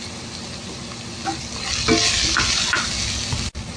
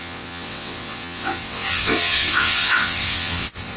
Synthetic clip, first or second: second